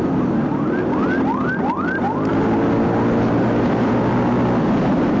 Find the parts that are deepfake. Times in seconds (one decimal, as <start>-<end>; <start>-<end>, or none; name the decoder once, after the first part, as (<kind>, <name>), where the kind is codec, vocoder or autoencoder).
none

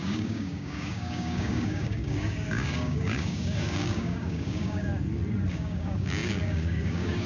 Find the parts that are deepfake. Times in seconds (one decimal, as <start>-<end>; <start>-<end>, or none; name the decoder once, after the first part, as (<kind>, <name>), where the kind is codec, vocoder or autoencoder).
0.0-4.9 (codec, DAC); 5.5-7.3

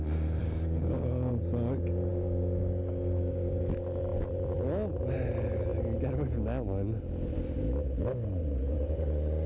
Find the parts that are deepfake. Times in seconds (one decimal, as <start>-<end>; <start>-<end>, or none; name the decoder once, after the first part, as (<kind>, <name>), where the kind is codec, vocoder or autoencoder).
0.4-1.3 (codec, DAC); 2.1-3.6

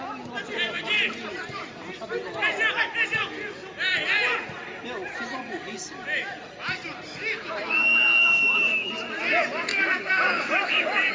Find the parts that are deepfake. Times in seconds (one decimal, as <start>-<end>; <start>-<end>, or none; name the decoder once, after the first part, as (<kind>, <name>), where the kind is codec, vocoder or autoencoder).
8.2-8.9 (codec, DAC); 9.7-11.1

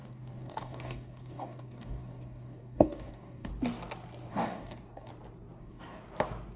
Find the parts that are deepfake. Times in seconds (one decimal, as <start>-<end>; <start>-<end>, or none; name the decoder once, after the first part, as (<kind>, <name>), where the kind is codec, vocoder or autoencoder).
0.0-3.5 (codec, DAC); 4.3-5.1; 5.6-6.0

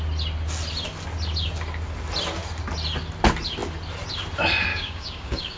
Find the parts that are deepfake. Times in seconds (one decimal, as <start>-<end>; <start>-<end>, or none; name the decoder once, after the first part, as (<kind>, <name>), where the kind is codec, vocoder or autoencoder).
4.7-5.6 (codec, DAC)

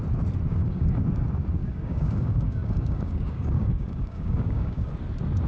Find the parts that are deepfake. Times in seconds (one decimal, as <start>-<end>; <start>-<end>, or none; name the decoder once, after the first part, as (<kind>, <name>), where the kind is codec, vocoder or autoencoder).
0.5-1.0 (codec, DAC); 1.6-4.9